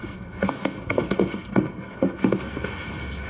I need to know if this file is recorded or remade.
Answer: remade